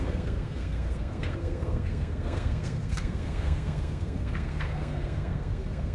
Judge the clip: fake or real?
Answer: fake